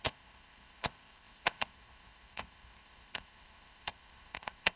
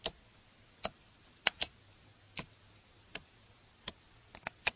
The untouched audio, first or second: second